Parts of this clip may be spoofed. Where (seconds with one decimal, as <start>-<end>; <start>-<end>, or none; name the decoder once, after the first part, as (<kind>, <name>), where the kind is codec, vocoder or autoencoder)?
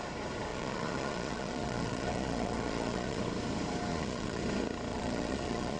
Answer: 0.5-3.2 (vocoder, Vocos); 3.9-4.4; 4.9-5.8